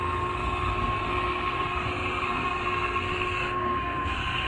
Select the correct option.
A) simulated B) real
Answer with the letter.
A